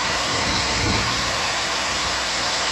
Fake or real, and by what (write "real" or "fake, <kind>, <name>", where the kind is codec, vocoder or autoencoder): fake, codec, SNAC